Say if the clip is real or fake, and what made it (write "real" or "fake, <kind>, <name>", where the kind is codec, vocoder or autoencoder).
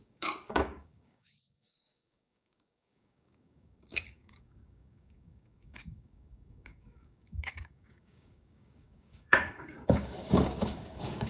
fake, codec, DAC